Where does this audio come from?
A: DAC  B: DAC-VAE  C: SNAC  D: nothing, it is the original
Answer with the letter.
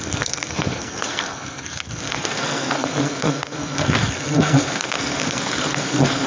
C